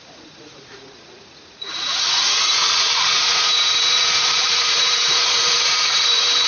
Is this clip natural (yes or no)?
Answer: no